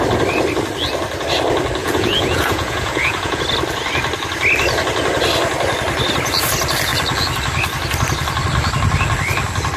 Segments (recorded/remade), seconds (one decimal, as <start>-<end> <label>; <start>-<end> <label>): 0.0-1.8 recorded; 1.8-3.4 remade; 3.4-9.8 recorded